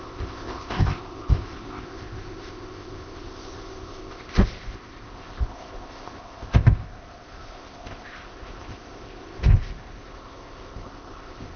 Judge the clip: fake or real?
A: fake